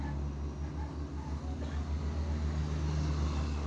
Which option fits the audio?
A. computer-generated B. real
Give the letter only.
B